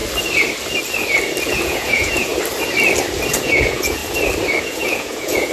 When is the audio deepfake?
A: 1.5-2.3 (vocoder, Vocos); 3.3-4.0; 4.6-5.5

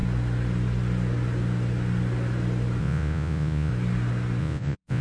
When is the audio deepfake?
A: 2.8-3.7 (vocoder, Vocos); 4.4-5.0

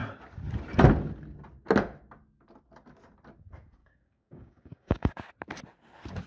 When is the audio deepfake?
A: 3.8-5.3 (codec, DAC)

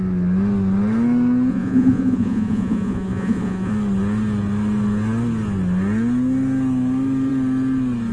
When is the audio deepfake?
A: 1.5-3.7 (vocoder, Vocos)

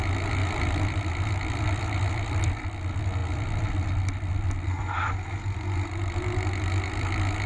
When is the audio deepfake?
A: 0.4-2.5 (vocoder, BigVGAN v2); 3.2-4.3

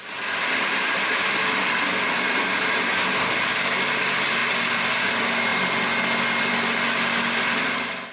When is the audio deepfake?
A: none